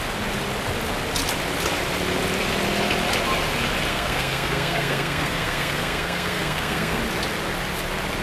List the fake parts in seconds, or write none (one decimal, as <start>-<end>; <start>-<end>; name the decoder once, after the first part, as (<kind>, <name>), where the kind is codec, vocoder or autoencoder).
3.9-7.0 (codec, SNAC)

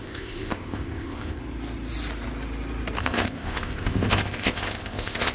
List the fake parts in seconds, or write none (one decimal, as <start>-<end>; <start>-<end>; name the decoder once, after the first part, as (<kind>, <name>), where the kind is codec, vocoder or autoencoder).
0.0-1.4 (codec, ZipCodec); 3.0-5.3

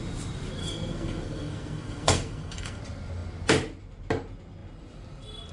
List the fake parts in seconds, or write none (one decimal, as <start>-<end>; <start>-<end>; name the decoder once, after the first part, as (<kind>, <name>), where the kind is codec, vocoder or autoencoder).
0.6-2.8 (codec, SNAC)

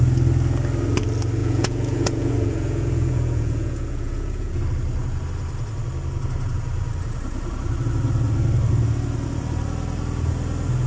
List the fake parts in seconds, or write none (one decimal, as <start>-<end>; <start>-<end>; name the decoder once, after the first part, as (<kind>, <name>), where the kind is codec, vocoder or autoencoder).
1.4-4.6 (vocoder, Vocos)

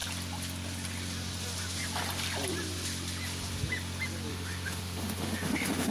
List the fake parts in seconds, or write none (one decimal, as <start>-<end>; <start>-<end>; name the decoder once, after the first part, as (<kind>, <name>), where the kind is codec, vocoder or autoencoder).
4.3-5.9 (autoencoder, DAC-VAE)

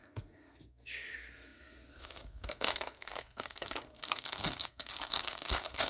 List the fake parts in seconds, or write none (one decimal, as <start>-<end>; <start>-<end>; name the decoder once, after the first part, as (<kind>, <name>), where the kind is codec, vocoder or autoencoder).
0.0-5.9 (codec, SNAC)